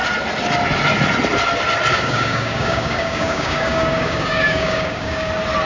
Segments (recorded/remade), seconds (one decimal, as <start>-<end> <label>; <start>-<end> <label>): 0.0-1.9 recorded; 1.9-5.3 remade; 5.3-5.7 recorded